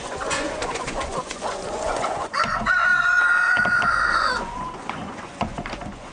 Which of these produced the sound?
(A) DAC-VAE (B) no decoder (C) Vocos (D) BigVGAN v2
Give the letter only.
C